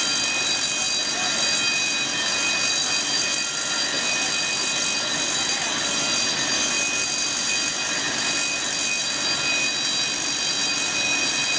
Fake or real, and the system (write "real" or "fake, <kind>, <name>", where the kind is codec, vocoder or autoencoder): real